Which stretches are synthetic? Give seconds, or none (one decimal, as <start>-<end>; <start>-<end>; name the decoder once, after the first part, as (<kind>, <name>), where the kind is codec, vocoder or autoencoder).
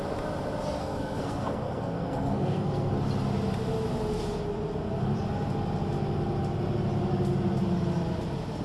0.8-2.9 (codec, SNAC)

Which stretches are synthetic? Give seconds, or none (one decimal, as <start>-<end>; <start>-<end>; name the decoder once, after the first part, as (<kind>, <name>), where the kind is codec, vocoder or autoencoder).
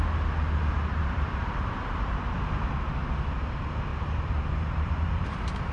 0.8-2.5 (vocoder, BigVGAN v2); 3.9-5.7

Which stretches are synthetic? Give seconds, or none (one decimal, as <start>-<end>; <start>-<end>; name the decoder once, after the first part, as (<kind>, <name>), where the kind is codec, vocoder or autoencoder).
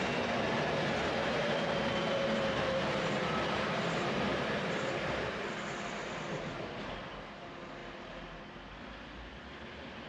1.2-5.6 (vocoder, BigVGAN v2)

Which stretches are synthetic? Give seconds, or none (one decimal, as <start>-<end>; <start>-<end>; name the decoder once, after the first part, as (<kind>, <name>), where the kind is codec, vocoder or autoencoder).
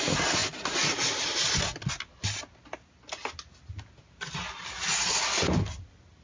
none